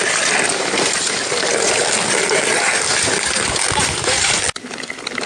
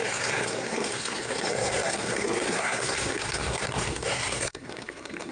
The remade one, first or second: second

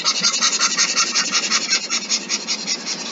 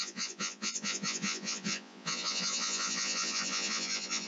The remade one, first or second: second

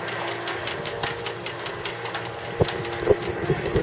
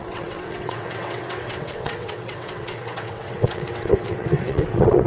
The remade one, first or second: second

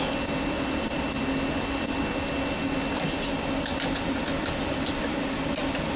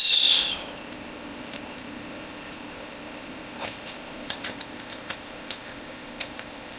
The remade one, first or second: second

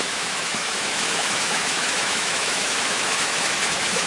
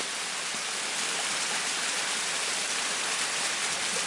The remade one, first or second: first